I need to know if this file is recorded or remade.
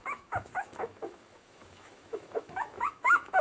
remade